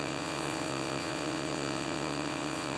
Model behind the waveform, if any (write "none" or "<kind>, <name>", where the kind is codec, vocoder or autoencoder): vocoder, WaveNeXt